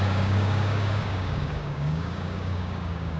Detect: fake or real fake